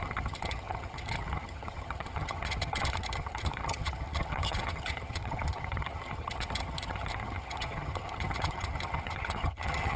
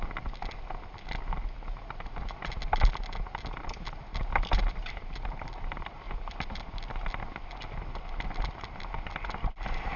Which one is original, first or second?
second